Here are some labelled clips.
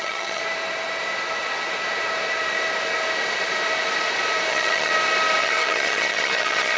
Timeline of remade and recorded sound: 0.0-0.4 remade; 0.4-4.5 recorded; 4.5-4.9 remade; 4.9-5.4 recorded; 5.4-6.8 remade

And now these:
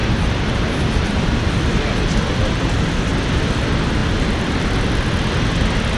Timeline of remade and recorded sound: 0.0-1.6 remade; 1.6-6.0 recorded

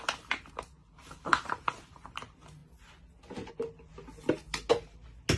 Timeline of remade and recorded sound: 0.0-5.4 recorded

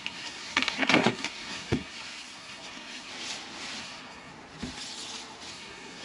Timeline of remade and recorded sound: 0.0-3.1 remade; 3.1-3.8 recorded; 3.8-4.3 remade; 4.3-5.5 recorded; 5.5-6.0 remade

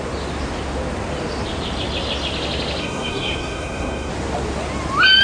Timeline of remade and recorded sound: 0.0-2.8 recorded; 2.8-4.1 remade; 4.1-5.2 recorded

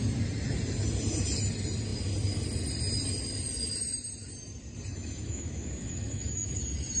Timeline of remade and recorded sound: 0.0-4.9 recorded; 4.9-6.6 remade; 6.6-7.0 recorded

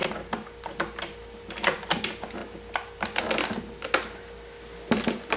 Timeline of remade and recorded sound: 0.0-5.4 recorded

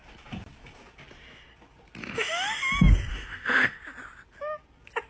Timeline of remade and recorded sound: 0.0-2.0 recorded; 2.0-2.6 remade; 2.6-3.1 recorded; 3.1-3.8 remade; 3.8-5.1 recorded